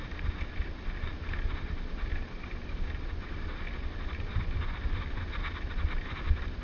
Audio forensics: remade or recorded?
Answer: recorded